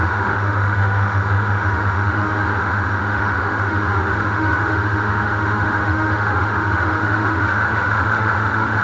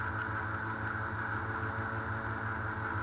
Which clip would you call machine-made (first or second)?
first